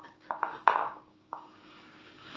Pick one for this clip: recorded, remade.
remade